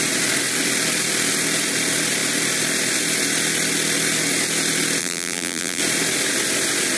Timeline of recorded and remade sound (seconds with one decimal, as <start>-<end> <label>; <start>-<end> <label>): 0.0-5.0 recorded; 5.0-5.8 remade; 5.8-7.0 recorded